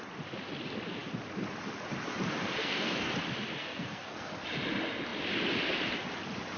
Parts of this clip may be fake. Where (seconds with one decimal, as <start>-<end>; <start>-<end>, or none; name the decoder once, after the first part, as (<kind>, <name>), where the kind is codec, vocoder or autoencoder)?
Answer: 2.6-3.1 (codec, SNAC); 3.6-4.3